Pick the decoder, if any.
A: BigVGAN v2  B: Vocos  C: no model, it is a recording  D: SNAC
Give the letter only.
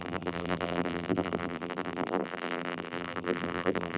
A